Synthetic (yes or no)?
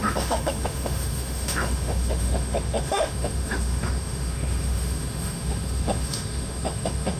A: yes